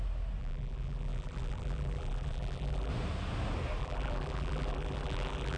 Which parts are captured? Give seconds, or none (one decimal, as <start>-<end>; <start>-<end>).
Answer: 0.0-0.4; 2.9-3.8